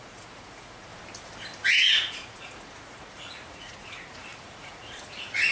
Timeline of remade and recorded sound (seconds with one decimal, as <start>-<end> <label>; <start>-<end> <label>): 0.0-0.9 remade; 0.9-1.7 recorded; 1.7-5.5 remade